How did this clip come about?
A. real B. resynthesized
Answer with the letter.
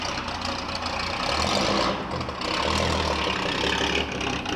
A